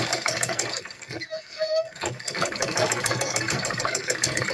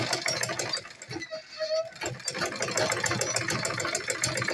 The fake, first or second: first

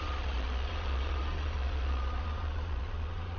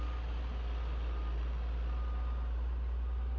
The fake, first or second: first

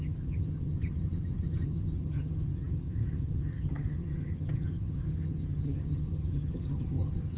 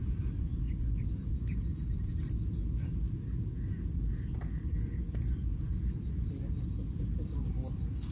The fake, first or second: first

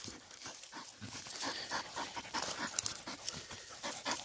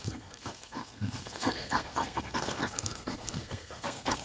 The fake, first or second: second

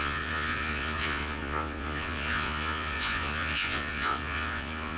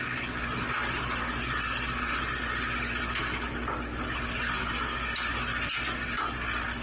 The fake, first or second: first